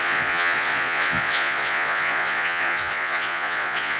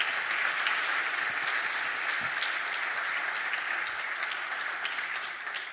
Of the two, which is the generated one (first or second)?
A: first